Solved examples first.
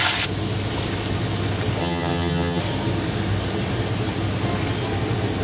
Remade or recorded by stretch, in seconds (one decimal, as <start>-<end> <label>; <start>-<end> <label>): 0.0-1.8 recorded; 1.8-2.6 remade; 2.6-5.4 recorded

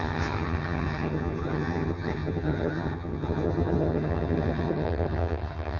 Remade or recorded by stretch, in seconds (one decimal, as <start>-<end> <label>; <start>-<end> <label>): 0.0-5.8 remade

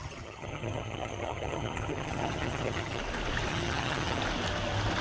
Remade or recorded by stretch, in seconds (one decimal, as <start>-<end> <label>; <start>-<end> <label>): 0.0-3.0 remade; 3.0-3.5 recorded; 3.5-4.2 remade; 4.2-5.0 recorded

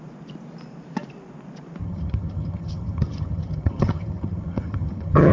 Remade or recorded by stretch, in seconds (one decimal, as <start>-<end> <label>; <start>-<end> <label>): 0.0-1.8 recorded; 1.8-5.3 remade

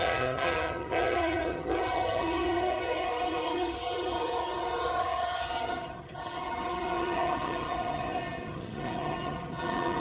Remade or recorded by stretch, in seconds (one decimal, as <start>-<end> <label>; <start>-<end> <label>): 0.0-10.0 remade

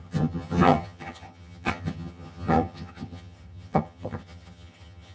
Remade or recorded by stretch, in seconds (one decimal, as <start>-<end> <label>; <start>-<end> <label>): 0.0-5.1 remade